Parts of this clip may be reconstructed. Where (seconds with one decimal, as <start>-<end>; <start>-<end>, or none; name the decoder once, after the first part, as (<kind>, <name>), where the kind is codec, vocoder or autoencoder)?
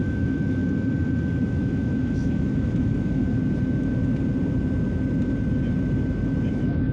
0.0-0.6 (autoencoder, DAC-VAE); 1.5-3.2; 6.5-6.9